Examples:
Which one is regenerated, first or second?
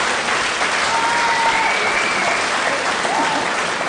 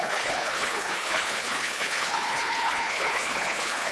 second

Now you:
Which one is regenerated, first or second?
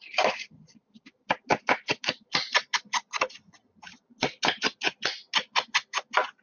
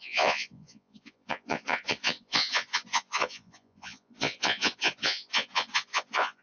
second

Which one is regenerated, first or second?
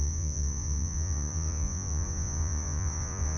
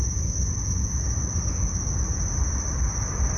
first